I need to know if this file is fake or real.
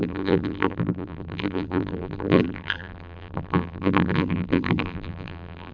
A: fake